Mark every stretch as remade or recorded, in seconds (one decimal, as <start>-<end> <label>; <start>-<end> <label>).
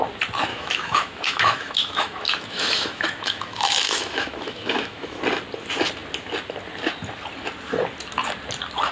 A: 0.0-0.5 recorded; 0.5-5.2 remade; 5.2-8.9 recorded